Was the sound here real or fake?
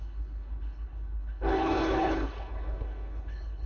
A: fake